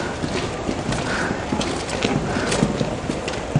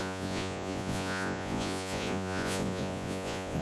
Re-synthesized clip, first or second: second